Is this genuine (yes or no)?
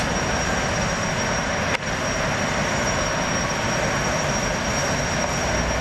yes